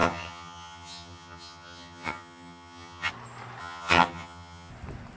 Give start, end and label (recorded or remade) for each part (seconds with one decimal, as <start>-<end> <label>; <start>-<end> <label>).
0.0-3.1 remade; 3.1-3.6 recorded; 3.6-4.7 remade; 4.7-5.2 recorded